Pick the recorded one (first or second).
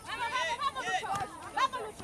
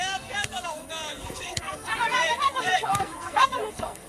first